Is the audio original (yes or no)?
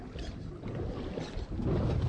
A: yes